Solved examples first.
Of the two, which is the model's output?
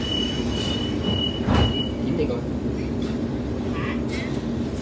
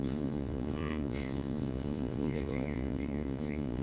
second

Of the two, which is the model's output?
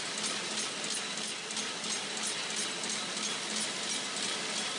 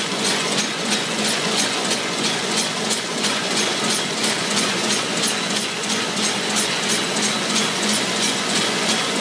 second